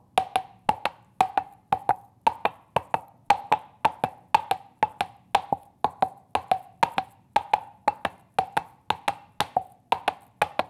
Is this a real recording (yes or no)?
yes